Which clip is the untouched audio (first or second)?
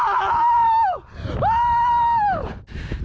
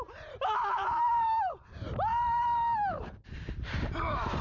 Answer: first